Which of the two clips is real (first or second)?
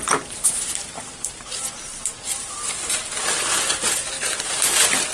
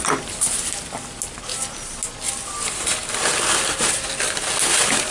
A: second